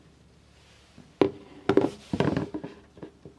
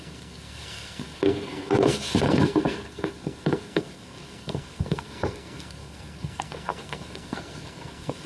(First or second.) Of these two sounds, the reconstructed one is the second